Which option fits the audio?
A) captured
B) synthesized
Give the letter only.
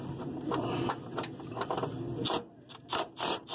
A